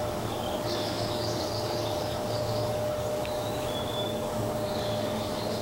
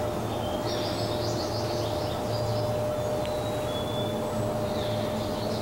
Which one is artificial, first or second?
first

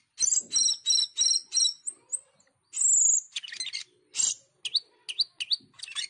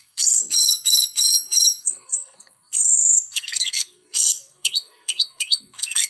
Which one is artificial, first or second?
second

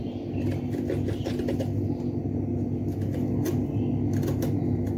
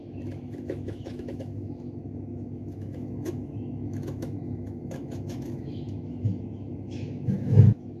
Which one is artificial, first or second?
second